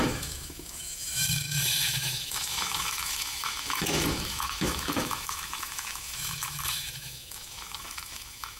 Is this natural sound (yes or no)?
no